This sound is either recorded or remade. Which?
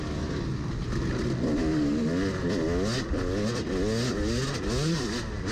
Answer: recorded